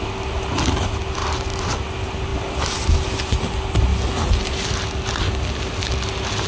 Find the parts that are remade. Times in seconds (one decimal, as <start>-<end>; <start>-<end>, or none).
1.2-1.7